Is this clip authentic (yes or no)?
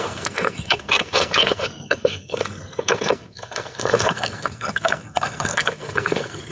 no